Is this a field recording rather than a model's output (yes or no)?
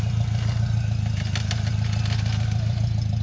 yes